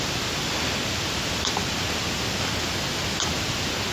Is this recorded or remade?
recorded